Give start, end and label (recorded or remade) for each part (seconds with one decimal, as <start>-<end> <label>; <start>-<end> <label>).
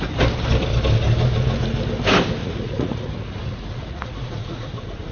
0.0-2.4 recorded; 2.4-5.1 remade